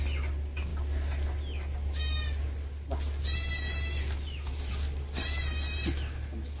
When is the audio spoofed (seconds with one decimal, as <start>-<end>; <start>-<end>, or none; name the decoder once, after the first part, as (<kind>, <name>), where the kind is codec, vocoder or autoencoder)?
none